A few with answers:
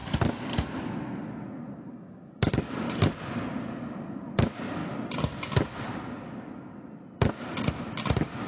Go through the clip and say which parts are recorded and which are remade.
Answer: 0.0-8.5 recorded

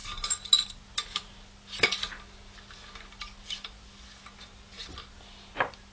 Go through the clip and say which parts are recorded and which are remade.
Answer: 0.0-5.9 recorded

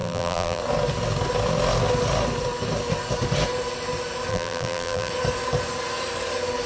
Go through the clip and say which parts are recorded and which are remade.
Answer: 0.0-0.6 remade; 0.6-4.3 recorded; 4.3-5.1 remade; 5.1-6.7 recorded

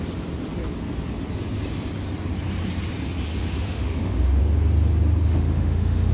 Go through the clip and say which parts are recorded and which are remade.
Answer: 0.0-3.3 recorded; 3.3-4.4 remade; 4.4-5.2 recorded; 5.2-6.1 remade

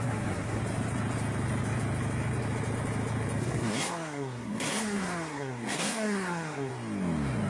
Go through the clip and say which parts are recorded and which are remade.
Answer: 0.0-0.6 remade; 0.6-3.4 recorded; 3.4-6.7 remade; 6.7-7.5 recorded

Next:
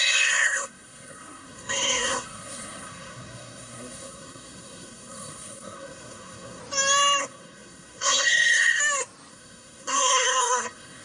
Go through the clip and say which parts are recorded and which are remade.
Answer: 0.0-6.6 remade; 6.6-7.2 recorded; 7.2-8.8 remade; 8.8-9.3 recorded; 9.3-11.0 remade

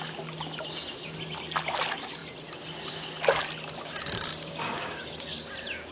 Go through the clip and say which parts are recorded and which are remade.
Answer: 0.0-4.3 recorded; 4.3-5.3 remade; 5.3-5.9 recorded

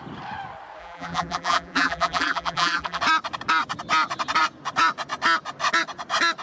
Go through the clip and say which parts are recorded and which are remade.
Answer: 0.0-0.8 recorded; 0.8-3.0 remade; 3.0-6.4 recorded